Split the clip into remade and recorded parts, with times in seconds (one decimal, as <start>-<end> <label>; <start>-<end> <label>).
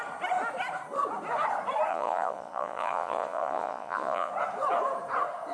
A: 0.0-1.9 recorded; 1.9-4.3 remade; 4.3-5.5 recorded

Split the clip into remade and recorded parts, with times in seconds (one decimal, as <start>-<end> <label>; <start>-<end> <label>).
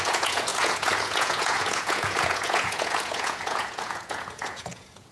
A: 0.0-5.1 remade